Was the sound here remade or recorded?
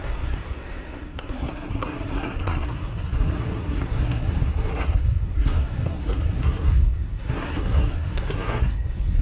remade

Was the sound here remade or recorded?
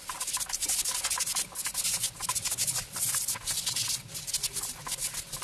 recorded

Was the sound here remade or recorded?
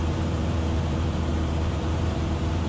remade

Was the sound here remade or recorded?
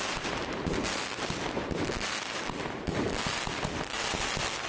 recorded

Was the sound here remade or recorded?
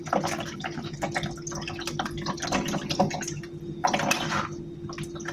recorded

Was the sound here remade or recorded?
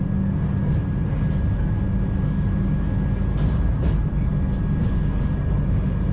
recorded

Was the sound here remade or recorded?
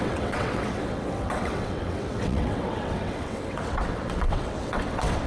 remade